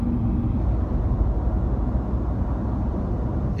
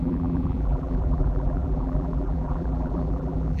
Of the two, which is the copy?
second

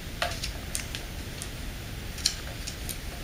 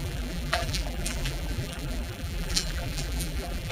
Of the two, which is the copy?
second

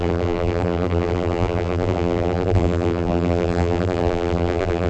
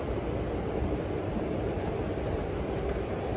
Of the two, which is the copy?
first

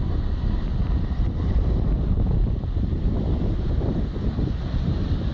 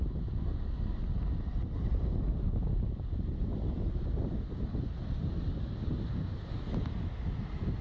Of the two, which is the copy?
first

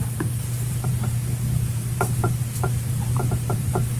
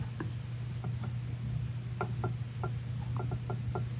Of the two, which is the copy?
first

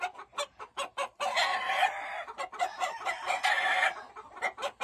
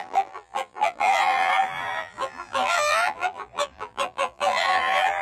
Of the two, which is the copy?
second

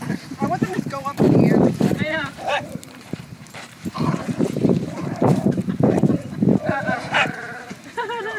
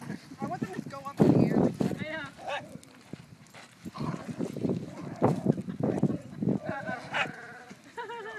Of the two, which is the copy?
first